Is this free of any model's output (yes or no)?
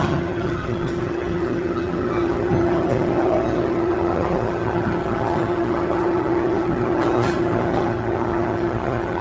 no